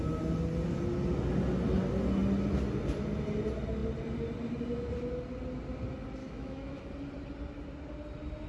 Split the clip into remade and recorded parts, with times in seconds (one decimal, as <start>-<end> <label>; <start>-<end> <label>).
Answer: 0.0-6.2 recorded; 6.2-6.9 remade; 6.9-8.5 recorded

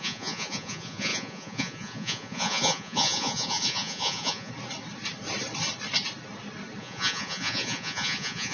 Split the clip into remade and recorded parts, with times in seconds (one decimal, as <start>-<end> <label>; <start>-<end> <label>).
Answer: 0.0-4.5 remade; 4.5-6.8 recorded; 6.8-8.5 remade